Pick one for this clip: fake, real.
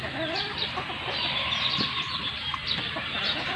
real